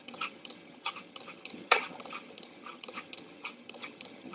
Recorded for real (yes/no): no